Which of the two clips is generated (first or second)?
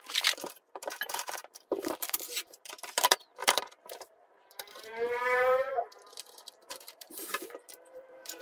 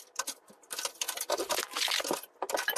first